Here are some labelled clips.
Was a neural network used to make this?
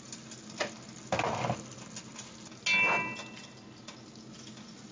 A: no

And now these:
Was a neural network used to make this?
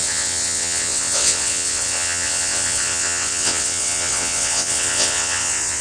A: yes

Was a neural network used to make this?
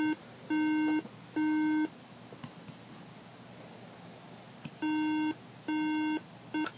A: no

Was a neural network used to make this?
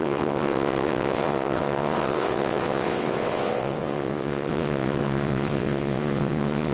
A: yes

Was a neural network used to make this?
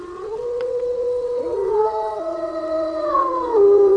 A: yes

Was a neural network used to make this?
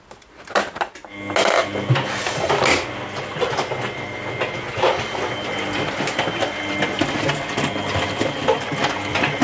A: no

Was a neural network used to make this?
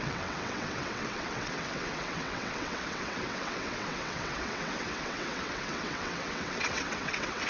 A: yes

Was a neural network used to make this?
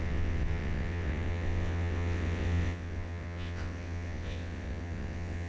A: yes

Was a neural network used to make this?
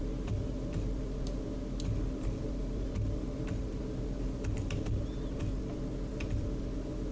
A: no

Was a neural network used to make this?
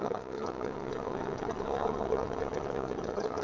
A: yes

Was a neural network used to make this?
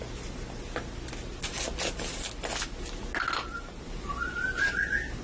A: no